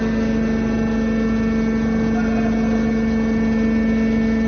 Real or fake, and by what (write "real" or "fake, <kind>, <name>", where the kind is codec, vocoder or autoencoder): real